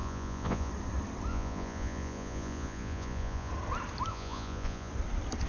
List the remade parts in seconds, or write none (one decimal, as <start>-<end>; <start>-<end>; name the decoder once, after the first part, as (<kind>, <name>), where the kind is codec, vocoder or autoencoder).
0.0-0.7 (vocoder, Vocos); 1.3-3.5; 4.1-4.9